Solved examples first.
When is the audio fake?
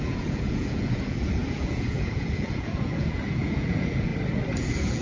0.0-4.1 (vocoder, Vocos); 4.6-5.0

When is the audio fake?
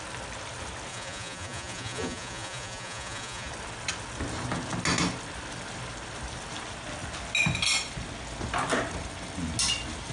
0.9-3.5 (vocoder, Vocos)